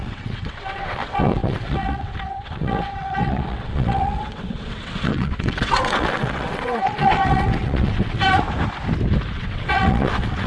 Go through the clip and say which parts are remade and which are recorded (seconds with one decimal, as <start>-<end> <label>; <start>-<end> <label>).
0.0-8.2 remade; 8.2-9.3 recorded; 9.3-10.5 remade